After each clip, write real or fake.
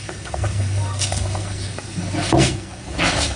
fake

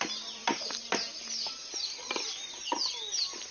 real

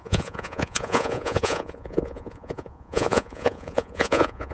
fake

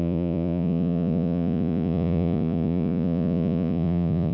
fake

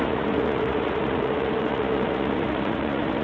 fake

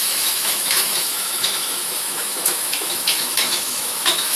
fake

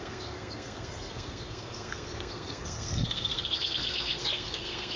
fake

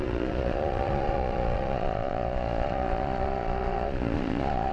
fake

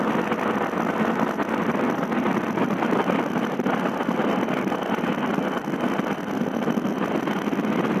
real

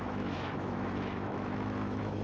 fake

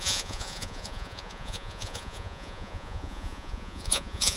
fake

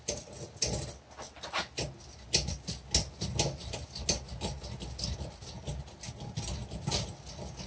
real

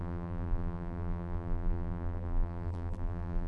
fake